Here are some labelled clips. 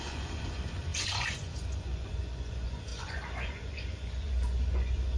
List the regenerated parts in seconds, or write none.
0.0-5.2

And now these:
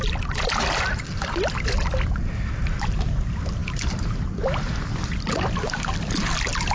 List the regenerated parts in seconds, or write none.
3.6-4.2

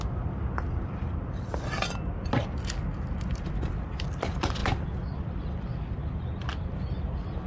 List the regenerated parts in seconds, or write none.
none